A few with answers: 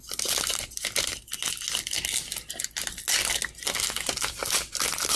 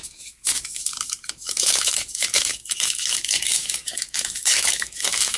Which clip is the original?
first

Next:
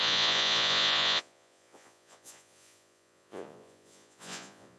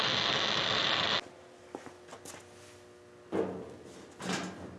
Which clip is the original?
second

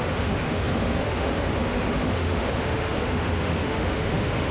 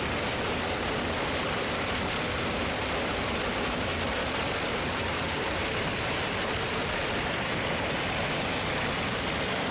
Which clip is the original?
second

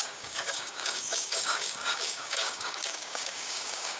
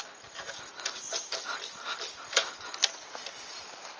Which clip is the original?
second